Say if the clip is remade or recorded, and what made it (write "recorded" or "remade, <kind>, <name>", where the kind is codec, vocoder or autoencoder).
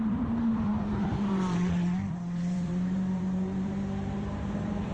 remade, vocoder, BigVGAN v2